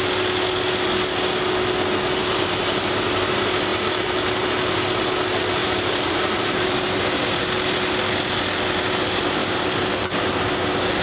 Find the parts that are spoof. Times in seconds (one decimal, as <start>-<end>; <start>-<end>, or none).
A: 2.2-3.2; 5.6-7.4; 9.4-10.4